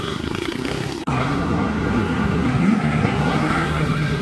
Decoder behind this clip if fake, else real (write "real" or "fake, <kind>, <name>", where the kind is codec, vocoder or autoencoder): fake, codec, SNAC